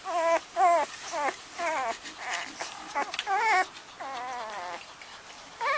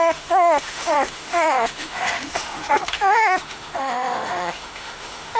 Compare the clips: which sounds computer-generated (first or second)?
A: second